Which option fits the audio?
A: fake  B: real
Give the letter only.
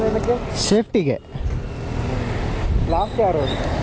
B